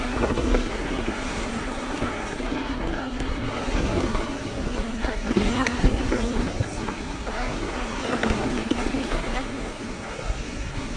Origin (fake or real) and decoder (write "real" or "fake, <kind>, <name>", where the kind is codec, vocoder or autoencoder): fake, codec, SNAC